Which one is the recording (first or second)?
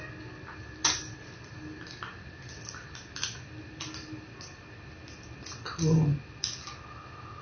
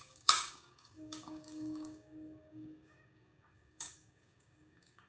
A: first